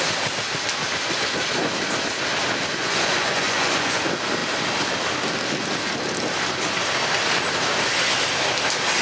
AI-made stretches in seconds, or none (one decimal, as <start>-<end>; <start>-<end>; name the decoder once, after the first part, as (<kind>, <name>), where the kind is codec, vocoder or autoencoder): 2.8-4.0 (vocoder, Vocos)